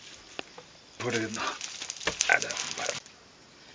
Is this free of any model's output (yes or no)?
yes